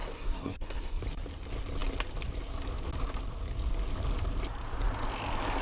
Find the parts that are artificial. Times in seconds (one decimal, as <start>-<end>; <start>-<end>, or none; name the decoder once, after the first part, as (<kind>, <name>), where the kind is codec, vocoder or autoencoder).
0.0-1.0 (codec, SNAC)